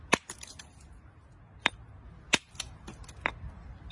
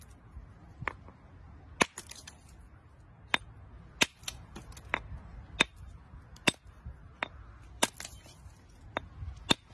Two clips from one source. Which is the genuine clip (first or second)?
second